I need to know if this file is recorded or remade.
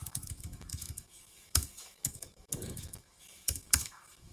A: remade